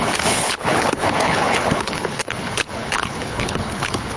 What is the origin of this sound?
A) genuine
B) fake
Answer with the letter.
B